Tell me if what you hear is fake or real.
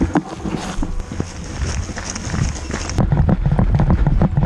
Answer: real